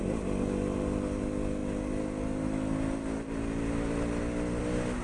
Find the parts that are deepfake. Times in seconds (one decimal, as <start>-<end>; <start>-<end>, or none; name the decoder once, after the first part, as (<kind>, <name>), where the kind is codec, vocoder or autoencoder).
none